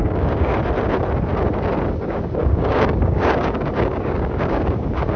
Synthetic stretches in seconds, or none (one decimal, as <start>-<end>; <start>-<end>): 0.0-0.5; 1.9-5.2